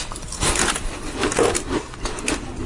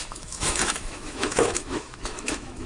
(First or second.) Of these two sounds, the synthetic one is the second